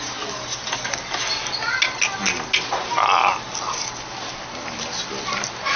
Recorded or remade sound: recorded